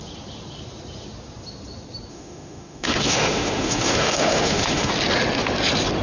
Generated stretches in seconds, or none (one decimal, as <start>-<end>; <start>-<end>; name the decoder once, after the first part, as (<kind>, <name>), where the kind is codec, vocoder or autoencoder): 2.1-4.9 (autoencoder, DAC-VAE)